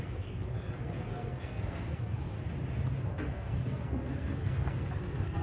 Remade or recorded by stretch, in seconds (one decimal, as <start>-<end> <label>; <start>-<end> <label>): 0.0-2.3 remade; 2.3-3.1 recorded; 3.1-5.4 remade